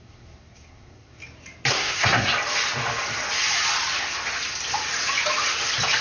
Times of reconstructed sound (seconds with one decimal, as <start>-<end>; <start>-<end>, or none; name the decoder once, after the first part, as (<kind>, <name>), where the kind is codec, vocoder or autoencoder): 0.0-1.2 (codec, SNAC); 1.7-2.3